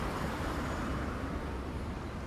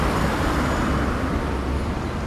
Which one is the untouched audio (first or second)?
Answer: second